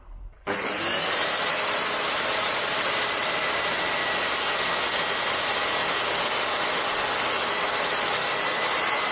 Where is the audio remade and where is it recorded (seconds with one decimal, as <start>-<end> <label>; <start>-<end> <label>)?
0.0-1.5 remade; 1.5-2.0 recorded; 2.0-4.0 remade; 4.0-5.3 recorded; 5.3-5.8 remade; 5.8-7.6 recorded; 7.6-9.1 remade